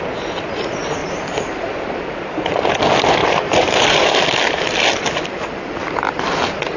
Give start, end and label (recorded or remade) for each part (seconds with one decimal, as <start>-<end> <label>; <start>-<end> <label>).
0.0-1.0 recorded; 1.0-2.8 remade; 2.8-3.2 recorded; 3.2-4.1 remade; 4.1-6.8 recorded